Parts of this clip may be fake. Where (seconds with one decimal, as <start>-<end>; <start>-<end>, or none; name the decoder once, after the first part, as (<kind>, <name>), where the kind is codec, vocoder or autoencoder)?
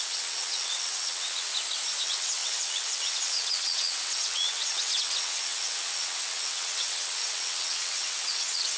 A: 0.0-1.5 (vocoder, WaveNeXt); 2.0-8.8